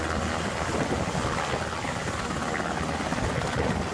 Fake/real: real